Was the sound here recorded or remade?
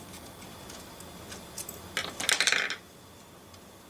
recorded